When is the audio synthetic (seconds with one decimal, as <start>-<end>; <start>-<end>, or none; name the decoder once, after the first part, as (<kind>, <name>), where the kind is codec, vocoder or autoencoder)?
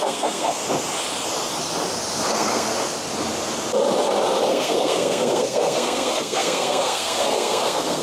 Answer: 0.0-0.6 (codec, SNAC); 2.3-2.7; 4.5-8.0